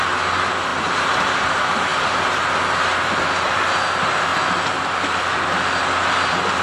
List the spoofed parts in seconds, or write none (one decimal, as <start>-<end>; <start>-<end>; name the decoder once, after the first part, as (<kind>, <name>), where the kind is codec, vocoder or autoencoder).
none